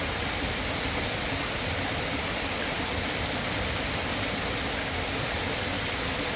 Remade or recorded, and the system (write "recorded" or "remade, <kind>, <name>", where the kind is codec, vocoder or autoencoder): recorded